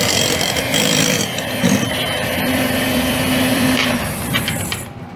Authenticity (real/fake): fake